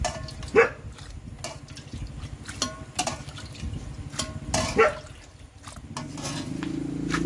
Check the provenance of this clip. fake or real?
real